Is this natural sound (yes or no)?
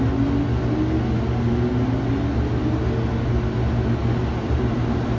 yes